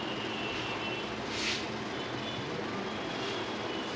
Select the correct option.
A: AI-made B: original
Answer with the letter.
B